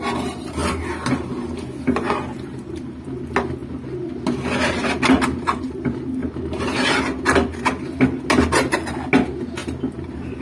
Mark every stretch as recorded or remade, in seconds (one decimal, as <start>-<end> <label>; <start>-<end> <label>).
0.0-6.2 recorded; 6.2-7.0 remade; 7.0-10.4 recorded